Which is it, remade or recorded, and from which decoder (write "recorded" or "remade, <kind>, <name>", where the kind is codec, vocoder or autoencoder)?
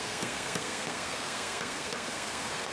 remade, codec, SNAC